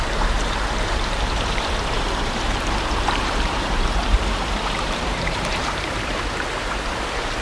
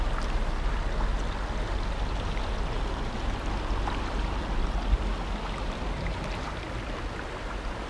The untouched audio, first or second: second